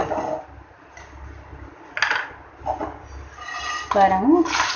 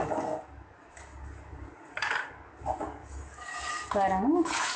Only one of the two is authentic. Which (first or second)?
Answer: first